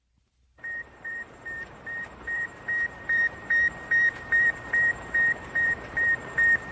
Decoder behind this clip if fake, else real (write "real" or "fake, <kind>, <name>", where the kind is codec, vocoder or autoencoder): fake, vocoder, BigVGAN v2